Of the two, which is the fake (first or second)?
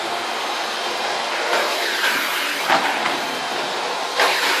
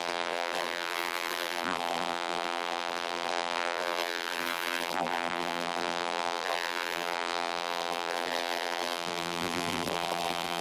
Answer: second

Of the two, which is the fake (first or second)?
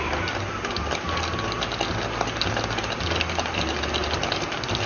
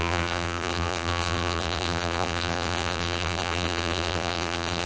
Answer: second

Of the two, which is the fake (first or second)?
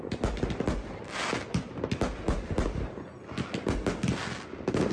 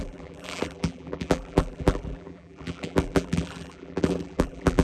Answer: second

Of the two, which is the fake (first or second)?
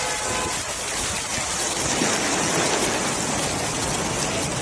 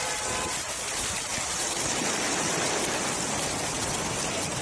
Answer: second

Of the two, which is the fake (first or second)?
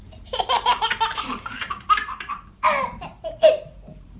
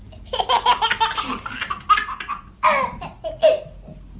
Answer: first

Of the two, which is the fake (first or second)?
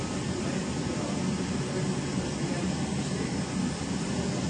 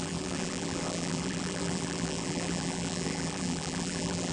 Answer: second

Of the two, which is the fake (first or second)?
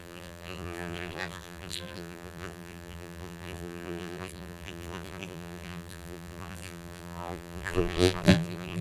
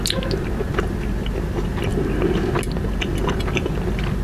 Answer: first